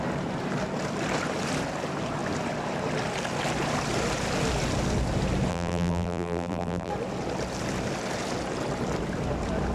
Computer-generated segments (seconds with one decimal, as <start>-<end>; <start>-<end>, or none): 5.5-6.9